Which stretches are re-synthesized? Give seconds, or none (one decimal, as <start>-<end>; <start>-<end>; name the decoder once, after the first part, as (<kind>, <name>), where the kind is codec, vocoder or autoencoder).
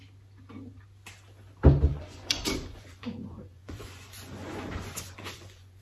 1.9-5.8 (vocoder, Vocos)